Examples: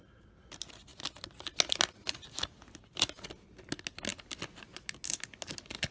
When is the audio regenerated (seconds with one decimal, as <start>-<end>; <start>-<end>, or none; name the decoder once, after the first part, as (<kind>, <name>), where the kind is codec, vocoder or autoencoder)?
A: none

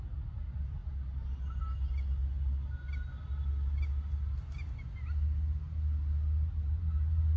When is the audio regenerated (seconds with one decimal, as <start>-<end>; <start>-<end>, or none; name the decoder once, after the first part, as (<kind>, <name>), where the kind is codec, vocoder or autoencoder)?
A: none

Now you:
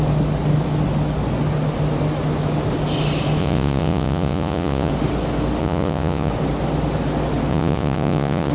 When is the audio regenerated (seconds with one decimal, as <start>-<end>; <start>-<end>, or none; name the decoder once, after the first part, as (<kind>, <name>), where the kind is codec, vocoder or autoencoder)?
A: 3.4-4.9 (vocoder, Vocos); 5.6-6.3; 7.5-8.5